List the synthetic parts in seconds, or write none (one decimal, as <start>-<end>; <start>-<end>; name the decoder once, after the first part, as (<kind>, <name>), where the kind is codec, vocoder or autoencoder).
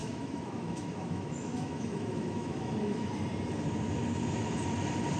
0.0-3.1 (autoencoder, DAC-VAE)